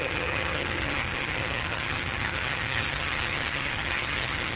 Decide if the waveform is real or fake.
fake